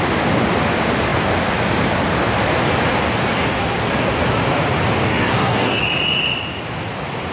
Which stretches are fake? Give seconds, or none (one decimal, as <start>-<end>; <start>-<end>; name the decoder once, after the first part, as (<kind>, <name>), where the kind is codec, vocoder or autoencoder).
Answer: 5.1-5.8 (codec, SNAC)